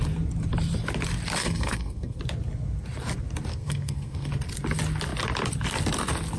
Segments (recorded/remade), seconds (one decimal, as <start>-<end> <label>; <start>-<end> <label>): 0.0-1.4 recorded; 1.4-2.2 remade; 2.2-3.5 recorded; 3.5-4.3 remade; 4.3-6.4 recorded